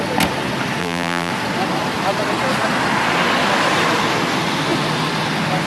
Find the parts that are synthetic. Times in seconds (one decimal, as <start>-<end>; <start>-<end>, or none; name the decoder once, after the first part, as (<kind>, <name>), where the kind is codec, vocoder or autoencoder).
0.8-1.3 (vocoder, BigVGAN v2)